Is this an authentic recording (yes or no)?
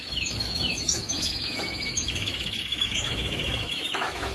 no